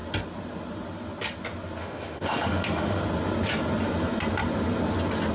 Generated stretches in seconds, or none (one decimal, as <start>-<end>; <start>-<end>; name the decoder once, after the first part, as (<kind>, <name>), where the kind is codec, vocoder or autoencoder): 1.8-3.0 (autoencoder, DAC-VAE)